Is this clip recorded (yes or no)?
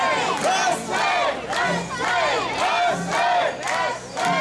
yes